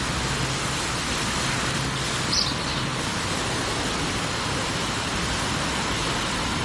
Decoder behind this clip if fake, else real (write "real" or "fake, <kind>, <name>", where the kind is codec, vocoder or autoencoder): real